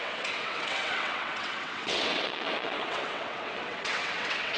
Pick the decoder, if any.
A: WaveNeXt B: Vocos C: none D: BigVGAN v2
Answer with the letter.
A